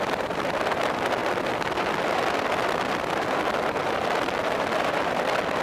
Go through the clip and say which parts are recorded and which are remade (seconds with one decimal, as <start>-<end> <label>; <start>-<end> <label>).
0.0-5.6 recorded